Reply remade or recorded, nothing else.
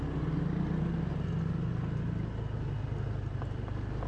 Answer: recorded